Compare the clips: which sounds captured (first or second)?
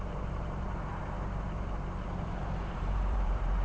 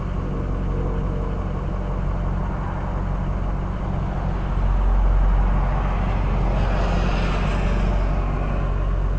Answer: second